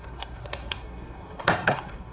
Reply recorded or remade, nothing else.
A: remade